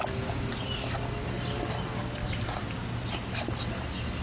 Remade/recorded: recorded